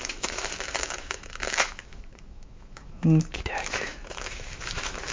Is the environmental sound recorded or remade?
remade